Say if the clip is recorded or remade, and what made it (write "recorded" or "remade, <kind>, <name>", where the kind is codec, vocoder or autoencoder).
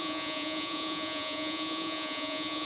remade, vocoder, Vocos